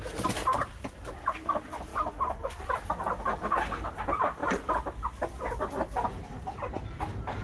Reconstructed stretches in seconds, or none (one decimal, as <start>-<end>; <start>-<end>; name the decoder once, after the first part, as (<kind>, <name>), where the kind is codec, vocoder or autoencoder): none